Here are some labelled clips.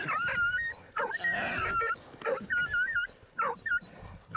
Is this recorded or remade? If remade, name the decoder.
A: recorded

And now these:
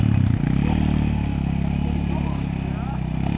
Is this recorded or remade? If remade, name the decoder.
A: recorded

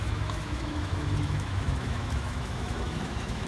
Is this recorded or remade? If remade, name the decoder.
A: remade, autoencoder, DAC-VAE